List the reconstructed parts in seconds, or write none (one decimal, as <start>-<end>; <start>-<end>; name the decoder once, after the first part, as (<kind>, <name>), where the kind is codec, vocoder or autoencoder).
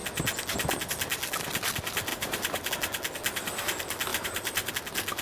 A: 2.1-2.7 (vocoder, BigVGAN v2); 4.1-4.7